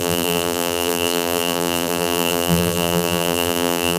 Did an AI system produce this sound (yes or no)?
yes